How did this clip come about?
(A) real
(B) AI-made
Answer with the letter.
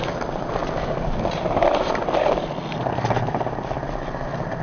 A